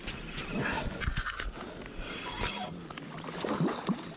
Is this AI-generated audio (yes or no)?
no